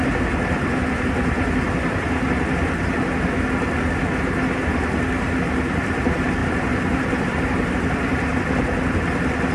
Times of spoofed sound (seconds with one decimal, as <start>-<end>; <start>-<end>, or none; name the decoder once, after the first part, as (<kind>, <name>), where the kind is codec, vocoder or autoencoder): 6.4-7.7 (vocoder, BigVGAN v2)